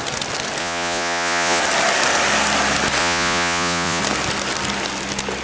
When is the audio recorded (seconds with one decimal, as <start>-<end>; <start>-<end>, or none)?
0.0-0.6; 1.6-3.0; 4.0-5.4